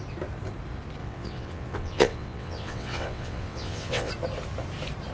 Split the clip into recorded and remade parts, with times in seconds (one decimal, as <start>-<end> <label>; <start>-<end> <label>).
0.0-1.0 recorded; 1.0-4.1 remade; 4.1-5.1 recorded